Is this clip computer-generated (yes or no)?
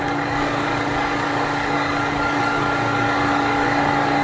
yes